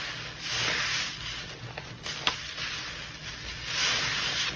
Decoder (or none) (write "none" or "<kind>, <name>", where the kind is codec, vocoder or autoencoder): none